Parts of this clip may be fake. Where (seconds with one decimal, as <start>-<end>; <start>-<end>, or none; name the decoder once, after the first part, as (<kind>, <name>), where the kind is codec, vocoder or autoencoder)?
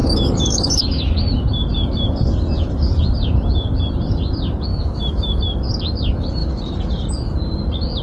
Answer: 0.0-1.1 (autoencoder, DAC-VAE); 4.7-5.4